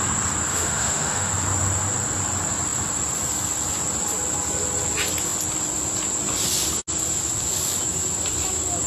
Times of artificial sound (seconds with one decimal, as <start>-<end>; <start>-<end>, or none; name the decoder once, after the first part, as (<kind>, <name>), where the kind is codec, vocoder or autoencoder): 0.5-1.3 (autoencoder, DAC-VAE)